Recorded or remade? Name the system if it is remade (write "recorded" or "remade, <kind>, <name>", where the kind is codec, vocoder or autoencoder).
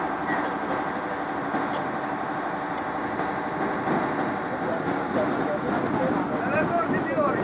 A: recorded